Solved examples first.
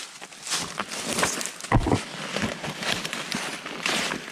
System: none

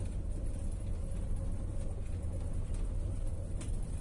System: none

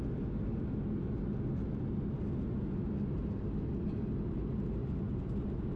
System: none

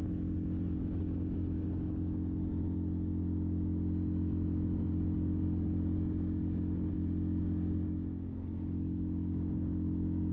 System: none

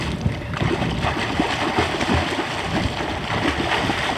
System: none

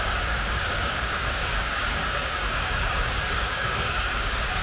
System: codec, DAC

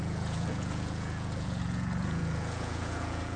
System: vocoder, Vocos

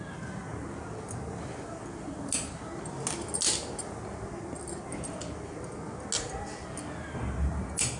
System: none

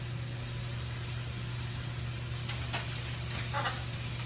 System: none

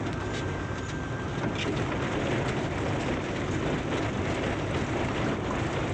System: none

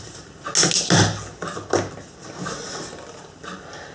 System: none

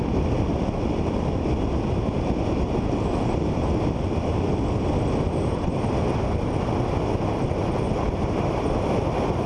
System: none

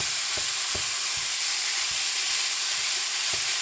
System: vocoder, BigVGAN v2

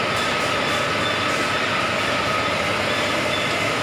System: none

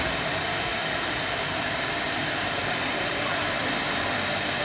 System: vocoder, BigVGAN v2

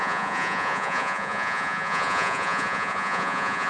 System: vocoder, Vocos